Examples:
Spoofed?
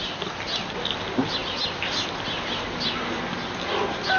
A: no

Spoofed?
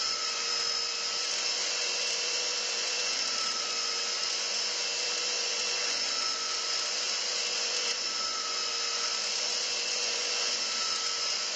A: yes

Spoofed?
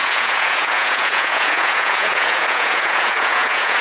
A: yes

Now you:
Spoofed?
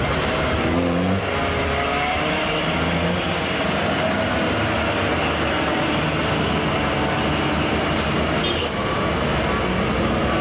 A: no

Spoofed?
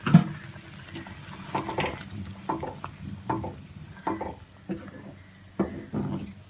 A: no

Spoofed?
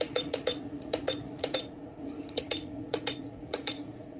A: yes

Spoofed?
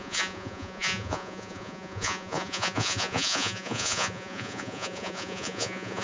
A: yes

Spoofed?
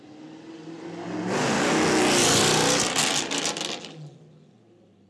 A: no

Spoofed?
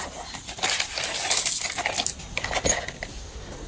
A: no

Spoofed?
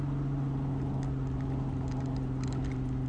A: no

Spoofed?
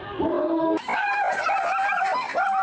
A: no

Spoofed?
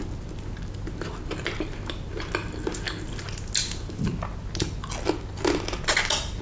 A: no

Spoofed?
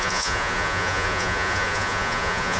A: yes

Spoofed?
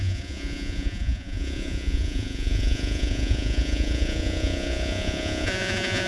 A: yes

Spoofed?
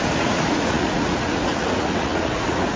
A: yes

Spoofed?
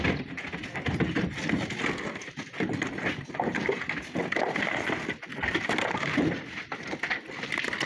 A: no